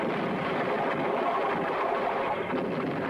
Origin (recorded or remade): recorded